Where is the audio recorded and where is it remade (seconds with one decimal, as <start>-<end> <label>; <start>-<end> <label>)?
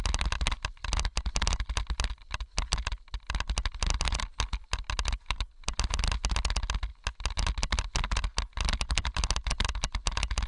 0.0-10.5 recorded